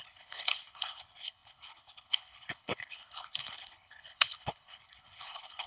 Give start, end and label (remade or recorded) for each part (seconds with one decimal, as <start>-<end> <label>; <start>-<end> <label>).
0.0-5.7 remade

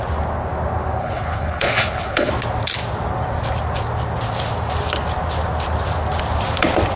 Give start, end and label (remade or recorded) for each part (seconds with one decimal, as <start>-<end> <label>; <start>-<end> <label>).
0.0-1.0 recorded; 1.0-2.3 remade; 2.3-7.0 recorded